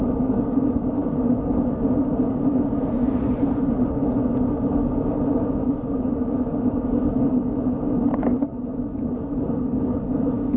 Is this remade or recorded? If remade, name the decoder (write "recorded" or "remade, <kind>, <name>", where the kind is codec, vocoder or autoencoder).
recorded